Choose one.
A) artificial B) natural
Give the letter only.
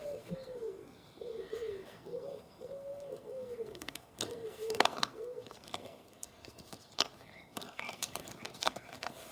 A